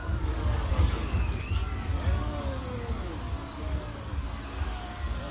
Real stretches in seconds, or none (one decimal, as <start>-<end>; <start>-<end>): none